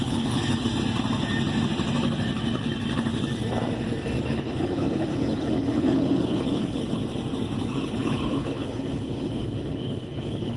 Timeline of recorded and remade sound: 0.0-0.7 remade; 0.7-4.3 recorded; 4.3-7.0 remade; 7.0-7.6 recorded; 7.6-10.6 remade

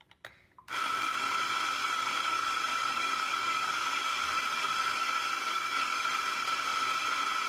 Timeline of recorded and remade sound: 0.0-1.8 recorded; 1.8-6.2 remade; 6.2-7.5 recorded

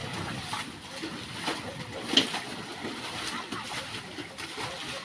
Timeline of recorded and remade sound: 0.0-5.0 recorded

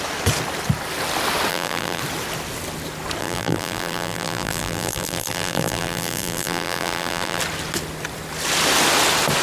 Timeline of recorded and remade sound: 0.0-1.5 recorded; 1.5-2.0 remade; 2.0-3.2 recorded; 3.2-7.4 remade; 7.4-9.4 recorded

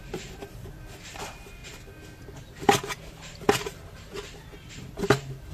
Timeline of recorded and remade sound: 0.0-1.6 remade; 1.6-4.9 recorded; 4.9-5.5 remade

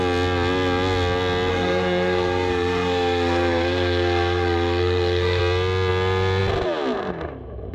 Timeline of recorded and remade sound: 0.0-1.5 recorded; 1.5-5.4 remade; 5.4-7.7 recorded

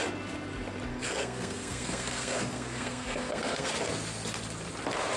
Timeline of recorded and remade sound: 0.0-0.9 recorded; 0.9-3.7 remade; 3.7-5.2 recorded

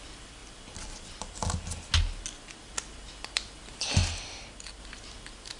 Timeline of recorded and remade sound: 0.0-5.6 recorded